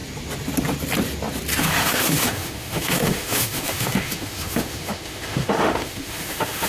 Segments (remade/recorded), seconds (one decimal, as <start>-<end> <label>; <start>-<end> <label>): 0.0-1.6 recorded; 1.6-6.7 remade